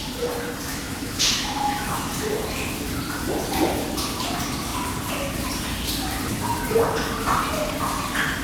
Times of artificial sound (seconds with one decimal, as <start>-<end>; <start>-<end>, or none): 0.7-2.1